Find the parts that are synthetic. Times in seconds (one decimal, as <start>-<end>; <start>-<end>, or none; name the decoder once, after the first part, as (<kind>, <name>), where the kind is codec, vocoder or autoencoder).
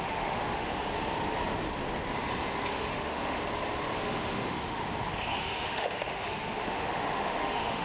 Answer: 0.0-0.7 (autoencoder, DAC-VAE); 2.7-3.4; 4.0-4.8; 5.4-7.8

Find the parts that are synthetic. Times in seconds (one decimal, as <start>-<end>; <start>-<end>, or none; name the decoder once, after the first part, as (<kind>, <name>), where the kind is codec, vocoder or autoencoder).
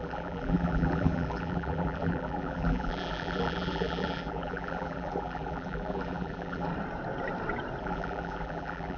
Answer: 0.0-6.7 (vocoder, BigVGAN v2); 7.8-9.0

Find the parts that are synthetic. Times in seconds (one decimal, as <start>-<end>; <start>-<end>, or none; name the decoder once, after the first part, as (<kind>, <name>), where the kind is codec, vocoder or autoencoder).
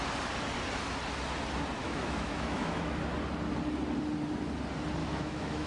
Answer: 1.8-3.0 (autoencoder, DAC-VAE); 5.0-5.7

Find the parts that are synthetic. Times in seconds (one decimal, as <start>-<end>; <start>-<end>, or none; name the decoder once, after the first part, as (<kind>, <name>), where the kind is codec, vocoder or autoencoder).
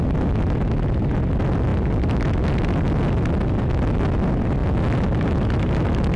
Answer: none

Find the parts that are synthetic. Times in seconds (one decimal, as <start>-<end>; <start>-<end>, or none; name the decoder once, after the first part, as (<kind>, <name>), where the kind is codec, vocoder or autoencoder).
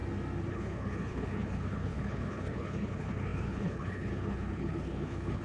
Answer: 0.5-5.4 (codec, HILCodec)